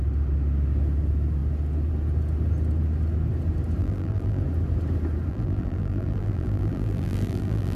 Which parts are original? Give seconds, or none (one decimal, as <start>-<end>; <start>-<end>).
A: 0.0-3.8; 4.4-5.3